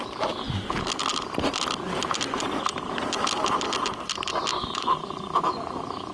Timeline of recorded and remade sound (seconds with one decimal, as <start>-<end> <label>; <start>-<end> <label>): 0.0-4.6 recorded; 4.6-6.1 remade